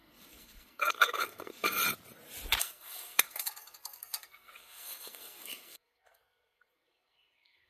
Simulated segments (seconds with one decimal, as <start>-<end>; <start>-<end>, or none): 0.0-1.8; 2.6-7.7